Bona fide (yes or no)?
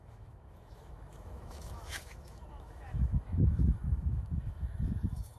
no